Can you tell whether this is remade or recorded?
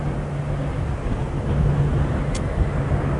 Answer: recorded